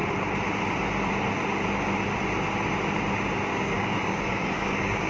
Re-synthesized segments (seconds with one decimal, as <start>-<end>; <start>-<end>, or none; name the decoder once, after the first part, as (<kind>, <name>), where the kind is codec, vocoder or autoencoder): 3.5-5.1 (codec, DAC)